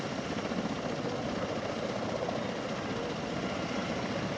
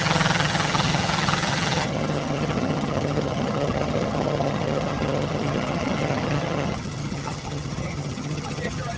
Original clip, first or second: first